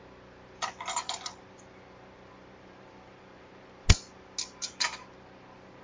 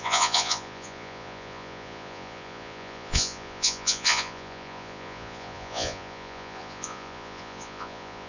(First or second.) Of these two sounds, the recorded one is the first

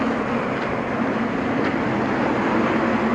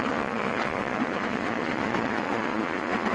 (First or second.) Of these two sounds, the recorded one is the first